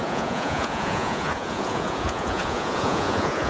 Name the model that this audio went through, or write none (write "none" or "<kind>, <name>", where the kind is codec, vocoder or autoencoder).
vocoder, Vocos